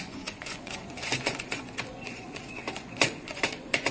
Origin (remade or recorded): remade